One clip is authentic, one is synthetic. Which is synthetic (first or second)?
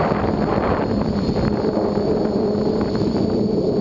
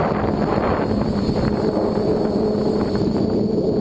first